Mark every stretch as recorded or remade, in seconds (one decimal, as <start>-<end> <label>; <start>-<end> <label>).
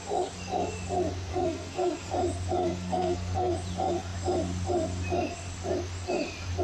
0.0-1.3 recorded; 1.3-2.1 remade; 2.1-2.6 recorded; 2.6-3.5 remade; 3.5-6.6 recorded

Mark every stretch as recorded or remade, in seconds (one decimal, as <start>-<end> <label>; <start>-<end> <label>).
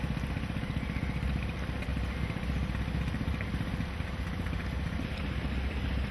0.0-6.1 recorded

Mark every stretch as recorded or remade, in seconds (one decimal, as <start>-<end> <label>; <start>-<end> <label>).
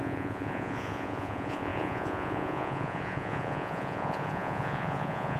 0.0-5.4 remade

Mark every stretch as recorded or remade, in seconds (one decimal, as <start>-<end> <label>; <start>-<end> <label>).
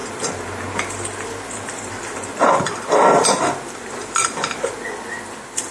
0.0-5.7 recorded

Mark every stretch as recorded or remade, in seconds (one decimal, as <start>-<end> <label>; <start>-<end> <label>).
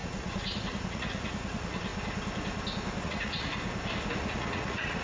0.0-1.9 remade; 1.9-3.0 recorded; 3.0-3.5 remade; 3.5-4.2 recorded; 4.2-5.0 remade